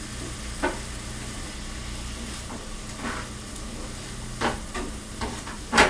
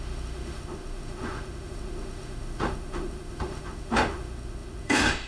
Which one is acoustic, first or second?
first